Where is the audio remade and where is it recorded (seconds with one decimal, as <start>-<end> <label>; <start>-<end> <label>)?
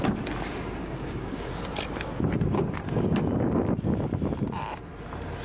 0.0-0.8 recorded; 0.8-1.5 remade; 1.5-5.4 recorded